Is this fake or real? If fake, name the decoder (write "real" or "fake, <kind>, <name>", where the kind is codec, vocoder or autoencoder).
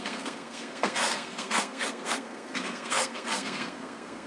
fake, codec, SNAC